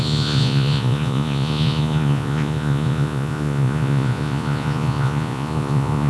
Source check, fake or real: fake